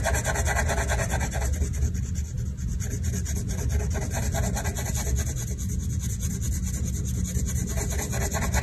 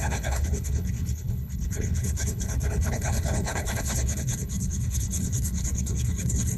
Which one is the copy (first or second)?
second